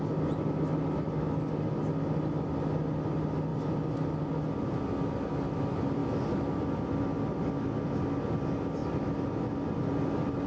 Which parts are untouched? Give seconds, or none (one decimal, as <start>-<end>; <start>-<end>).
0.0-10.5